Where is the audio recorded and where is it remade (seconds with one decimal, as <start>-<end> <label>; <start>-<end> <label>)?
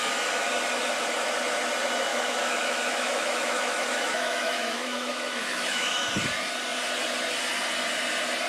0.0-2.1 recorded; 2.1-6.1 remade; 6.1-8.5 recorded